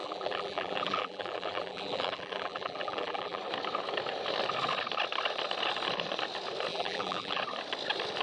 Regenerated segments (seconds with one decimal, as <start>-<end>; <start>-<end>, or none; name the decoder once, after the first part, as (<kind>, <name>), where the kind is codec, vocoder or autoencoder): 0.0-3.4 (vocoder, BigVGAN v2); 6.7-7.4